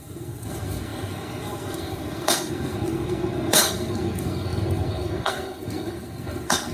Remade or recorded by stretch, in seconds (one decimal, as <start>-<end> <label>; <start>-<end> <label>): 0.0-6.7 remade